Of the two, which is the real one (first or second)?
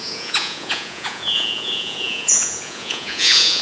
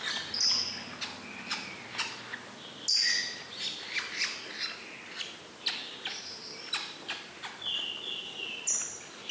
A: second